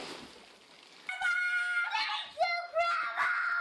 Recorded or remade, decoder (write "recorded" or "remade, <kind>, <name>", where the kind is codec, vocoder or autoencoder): recorded